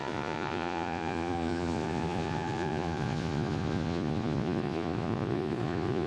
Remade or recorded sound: remade